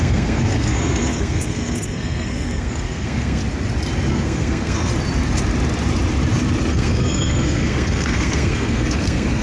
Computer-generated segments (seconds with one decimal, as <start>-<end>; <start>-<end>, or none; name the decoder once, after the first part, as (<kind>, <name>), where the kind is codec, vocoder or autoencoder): 0.0-3.4 (codec, SNAC); 4.1-4.9; 6.7-9.4